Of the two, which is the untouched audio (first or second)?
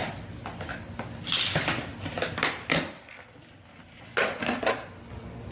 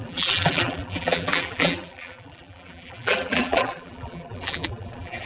first